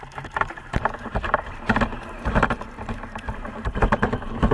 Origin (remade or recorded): remade